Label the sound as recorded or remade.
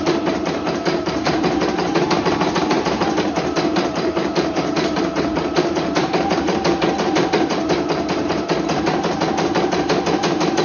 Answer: remade